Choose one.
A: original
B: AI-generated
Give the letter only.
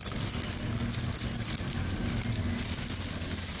A